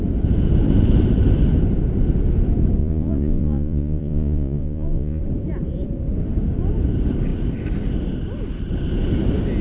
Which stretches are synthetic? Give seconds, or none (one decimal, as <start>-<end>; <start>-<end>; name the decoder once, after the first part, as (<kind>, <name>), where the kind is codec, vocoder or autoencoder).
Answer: 2.8-5.2 (vocoder, Vocos)